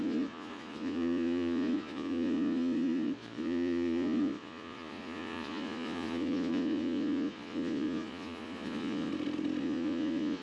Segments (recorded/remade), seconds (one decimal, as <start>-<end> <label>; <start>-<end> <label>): 0.0-9.1 remade; 9.1-9.6 recorded; 9.6-10.4 remade